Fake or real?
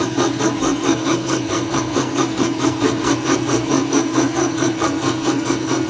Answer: fake